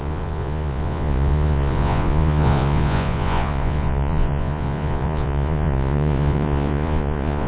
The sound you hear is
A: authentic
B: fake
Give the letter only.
B